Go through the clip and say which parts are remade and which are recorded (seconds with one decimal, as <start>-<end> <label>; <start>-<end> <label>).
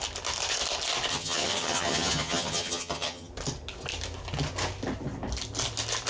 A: 0.0-1.1 recorded; 1.1-3.3 remade; 3.3-6.1 recorded